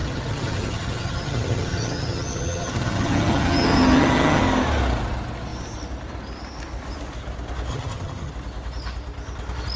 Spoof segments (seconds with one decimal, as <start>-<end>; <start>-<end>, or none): 0.0-4.4; 7.7-8.3